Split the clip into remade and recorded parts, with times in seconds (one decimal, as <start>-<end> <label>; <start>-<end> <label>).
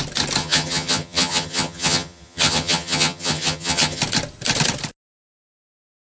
0.0-0.4 recorded; 0.4-4.0 remade; 4.0-6.0 recorded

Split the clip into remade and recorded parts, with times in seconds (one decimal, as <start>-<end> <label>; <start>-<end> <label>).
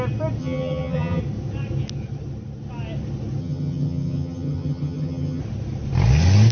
0.0-0.4 recorded; 0.4-1.2 remade; 1.2-3.4 recorded; 3.4-5.4 remade; 5.4-6.5 recorded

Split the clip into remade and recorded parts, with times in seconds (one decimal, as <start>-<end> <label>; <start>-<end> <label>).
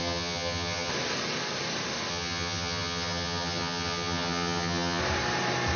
0.0-0.9 remade; 0.9-2.1 recorded; 2.1-5.0 remade; 5.0-5.8 recorded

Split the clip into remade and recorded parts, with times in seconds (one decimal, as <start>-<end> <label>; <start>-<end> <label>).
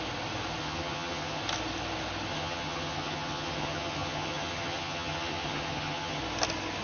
0.0-0.6 recorded; 0.6-1.4 remade; 1.4-2.3 recorded; 2.3-6.2 remade; 6.2-6.8 recorded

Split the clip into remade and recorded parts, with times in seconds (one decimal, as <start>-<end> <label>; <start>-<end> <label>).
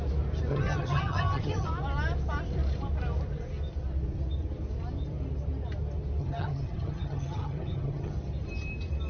0.0-0.5 recorded; 0.5-1.7 remade; 1.7-6.2 recorded; 6.2-8.1 remade; 8.1-9.1 recorded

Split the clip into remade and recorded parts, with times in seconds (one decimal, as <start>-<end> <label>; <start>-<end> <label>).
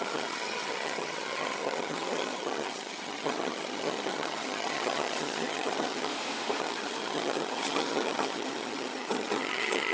0.0-6.1 remade; 6.1-6.6 recorded; 6.6-9.9 remade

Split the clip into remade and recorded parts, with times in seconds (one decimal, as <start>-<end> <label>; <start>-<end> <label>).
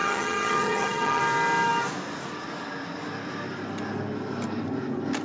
0.0-1.2 remade; 1.2-5.2 recorded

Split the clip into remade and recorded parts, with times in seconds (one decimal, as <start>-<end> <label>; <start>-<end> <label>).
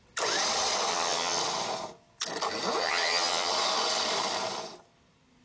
0.0-0.9 recorded; 0.9-1.4 remade; 1.4-2.8 recorded; 2.8-3.5 remade; 3.5-5.4 recorded